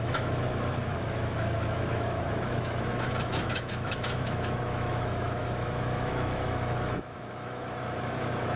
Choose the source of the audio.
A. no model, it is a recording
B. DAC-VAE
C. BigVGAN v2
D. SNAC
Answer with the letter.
B